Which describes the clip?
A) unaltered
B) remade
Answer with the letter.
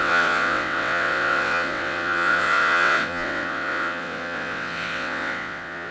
B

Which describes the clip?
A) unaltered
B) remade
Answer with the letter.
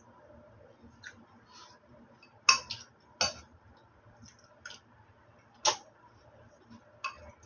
A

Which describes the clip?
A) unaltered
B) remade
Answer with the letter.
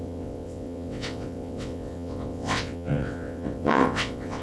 B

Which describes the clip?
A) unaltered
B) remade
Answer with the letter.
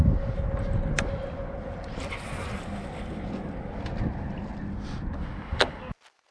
A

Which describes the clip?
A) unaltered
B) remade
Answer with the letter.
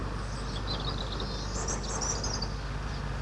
A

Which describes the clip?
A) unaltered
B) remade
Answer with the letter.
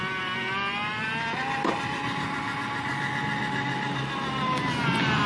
A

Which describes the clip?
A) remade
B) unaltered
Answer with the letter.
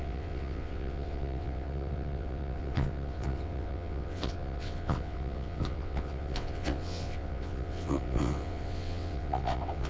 A